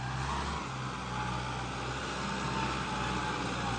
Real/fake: real